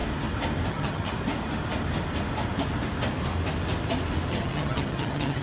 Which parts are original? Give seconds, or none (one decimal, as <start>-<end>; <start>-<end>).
0.0-0.7; 1.1-4.3